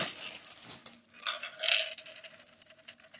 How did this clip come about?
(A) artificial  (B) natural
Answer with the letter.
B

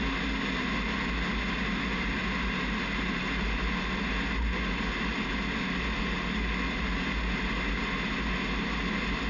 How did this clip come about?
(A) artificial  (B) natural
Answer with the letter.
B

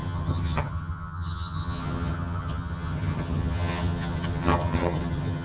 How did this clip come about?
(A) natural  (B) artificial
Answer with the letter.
B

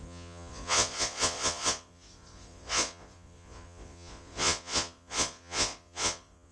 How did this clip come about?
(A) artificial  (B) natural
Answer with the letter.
A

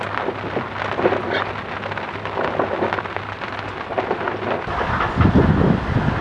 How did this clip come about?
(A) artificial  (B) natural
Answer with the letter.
B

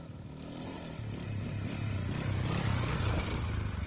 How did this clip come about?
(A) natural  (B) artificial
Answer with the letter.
A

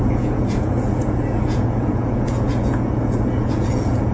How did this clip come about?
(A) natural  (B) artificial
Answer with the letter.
B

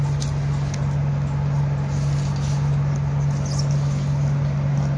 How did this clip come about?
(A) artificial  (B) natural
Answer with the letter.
B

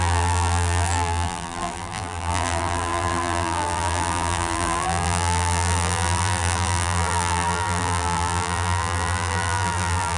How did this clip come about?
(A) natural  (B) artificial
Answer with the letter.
B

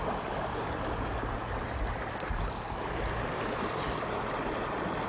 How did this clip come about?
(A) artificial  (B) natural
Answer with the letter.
B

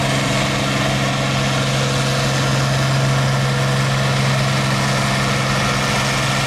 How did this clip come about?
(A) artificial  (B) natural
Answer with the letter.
B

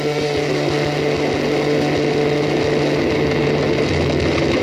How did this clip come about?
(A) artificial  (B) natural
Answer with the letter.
B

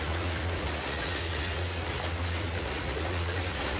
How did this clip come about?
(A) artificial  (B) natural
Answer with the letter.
A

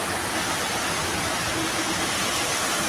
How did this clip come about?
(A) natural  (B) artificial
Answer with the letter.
A